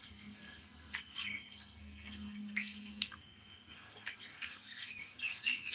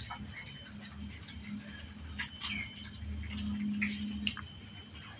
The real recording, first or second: second